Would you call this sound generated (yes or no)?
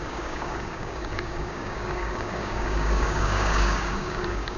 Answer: yes